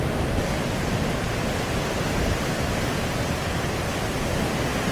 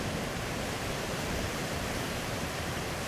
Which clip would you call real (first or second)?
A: first